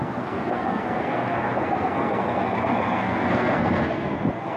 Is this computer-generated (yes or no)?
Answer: yes